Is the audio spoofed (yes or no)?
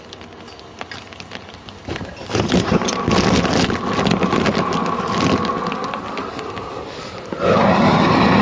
no